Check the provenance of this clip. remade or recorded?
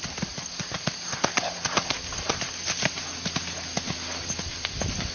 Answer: recorded